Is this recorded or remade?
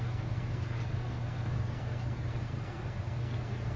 remade